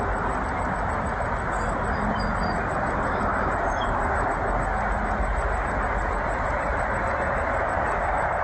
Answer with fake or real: real